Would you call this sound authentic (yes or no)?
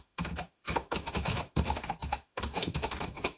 no